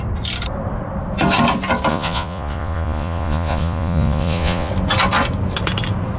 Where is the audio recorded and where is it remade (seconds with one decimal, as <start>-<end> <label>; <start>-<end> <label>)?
0.0-1.9 recorded; 1.9-4.7 remade; 4.7-6.2 recorded